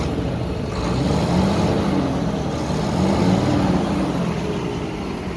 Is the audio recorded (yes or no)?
yes